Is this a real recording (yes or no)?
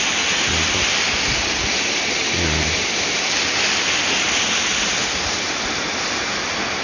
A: yes